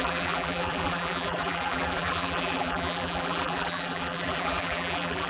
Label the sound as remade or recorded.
remade